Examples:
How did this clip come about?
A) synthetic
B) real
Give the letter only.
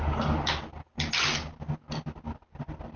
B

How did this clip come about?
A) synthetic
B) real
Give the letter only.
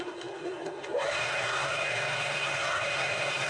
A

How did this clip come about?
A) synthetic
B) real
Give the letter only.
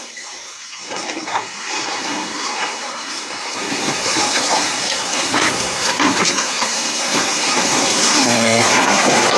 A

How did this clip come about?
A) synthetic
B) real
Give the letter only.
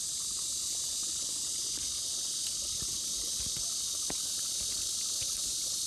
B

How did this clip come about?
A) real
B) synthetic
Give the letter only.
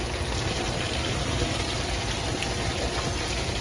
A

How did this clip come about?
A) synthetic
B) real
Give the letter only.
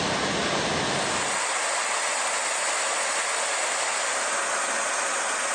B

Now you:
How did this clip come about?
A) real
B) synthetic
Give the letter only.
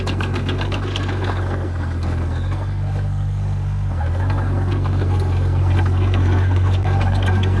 B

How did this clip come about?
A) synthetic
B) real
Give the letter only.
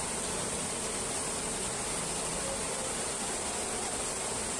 B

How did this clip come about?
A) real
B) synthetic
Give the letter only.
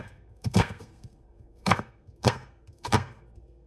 B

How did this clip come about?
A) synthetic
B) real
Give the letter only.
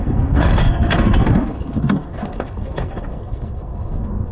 A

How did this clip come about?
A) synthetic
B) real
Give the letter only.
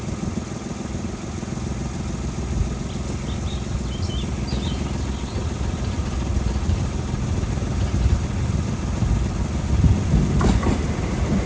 B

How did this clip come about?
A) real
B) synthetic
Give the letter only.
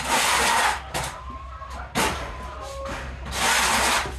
A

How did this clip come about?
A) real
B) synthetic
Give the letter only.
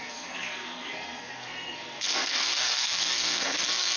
B